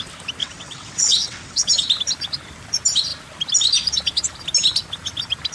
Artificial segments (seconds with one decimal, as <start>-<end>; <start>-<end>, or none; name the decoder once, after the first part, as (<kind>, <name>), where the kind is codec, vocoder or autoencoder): 0.4-1.7 (vocoder, WaveNeXt)